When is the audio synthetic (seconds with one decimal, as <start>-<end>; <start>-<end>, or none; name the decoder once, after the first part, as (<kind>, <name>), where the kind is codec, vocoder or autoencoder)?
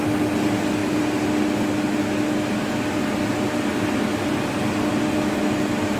none